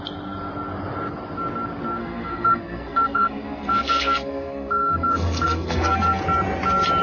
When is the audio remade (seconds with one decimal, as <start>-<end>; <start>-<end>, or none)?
2.0-6.2